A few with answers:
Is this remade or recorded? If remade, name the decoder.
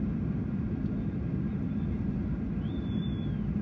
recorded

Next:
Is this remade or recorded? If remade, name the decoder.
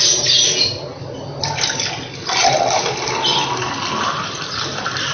recorded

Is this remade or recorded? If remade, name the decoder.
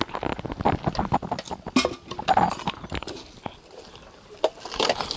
recorded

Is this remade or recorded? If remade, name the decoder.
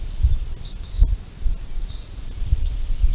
recorded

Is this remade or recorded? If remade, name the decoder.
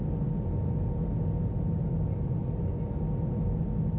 recorded